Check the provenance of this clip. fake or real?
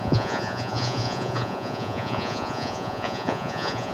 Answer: fake